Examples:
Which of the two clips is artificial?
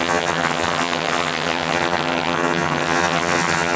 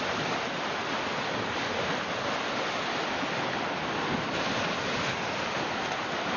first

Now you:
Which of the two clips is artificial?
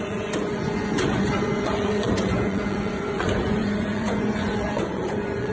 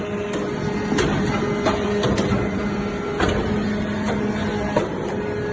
first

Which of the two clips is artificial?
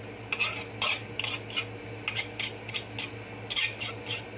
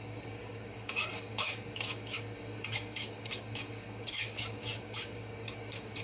second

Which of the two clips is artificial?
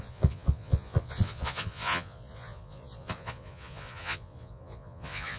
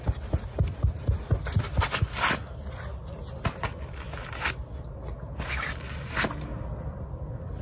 first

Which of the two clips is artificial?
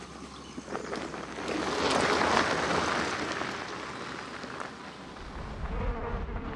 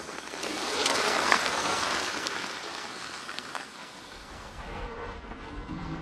second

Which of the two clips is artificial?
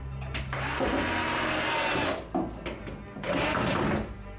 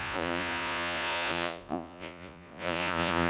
second